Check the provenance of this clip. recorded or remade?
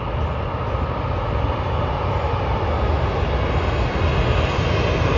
recorded